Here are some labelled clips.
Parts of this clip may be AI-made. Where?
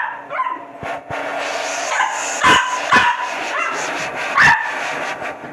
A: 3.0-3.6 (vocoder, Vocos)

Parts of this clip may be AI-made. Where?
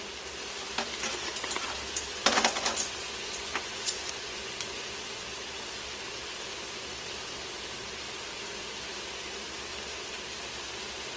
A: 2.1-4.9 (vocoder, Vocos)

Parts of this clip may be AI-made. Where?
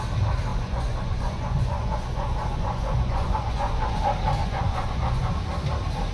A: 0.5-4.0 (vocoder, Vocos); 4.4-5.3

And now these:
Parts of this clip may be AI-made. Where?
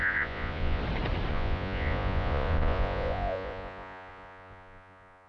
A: 0.0-0.8 (vocoder, Vocos); 1.3-5.3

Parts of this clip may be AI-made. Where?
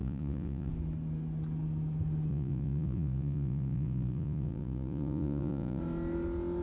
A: 0.0-0.7 (vocoder, Vocos); 2.3-5.8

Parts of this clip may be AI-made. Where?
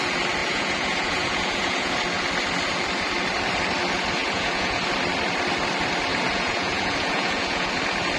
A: 0.4-1.9 (vocoder, Vocos); 4.2-4.8; 6.1-7.7